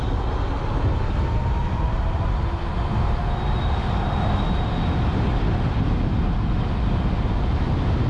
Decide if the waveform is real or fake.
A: real